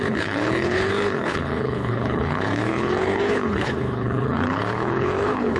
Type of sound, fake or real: fake